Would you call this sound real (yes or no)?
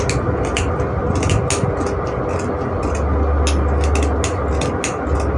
yes